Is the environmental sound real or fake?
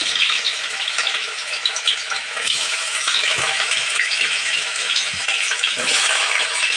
fake